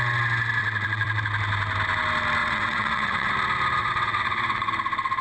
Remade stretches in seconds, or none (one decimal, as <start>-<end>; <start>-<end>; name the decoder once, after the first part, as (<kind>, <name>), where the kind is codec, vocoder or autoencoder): 0.6-1.2 (vocoder, WaveNeXt); 2.4-3.3; 3.8-4.7